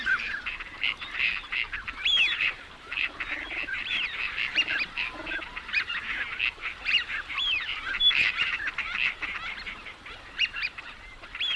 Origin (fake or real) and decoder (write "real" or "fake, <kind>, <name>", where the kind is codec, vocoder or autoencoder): fake, vocoder, BigVGAN v2